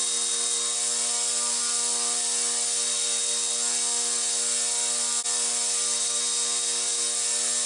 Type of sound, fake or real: real